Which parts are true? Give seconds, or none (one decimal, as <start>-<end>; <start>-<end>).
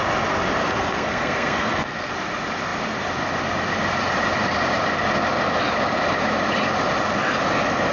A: 0.0-0.6; 2.1-7.9